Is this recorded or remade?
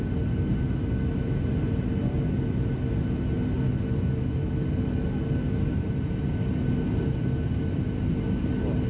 recorded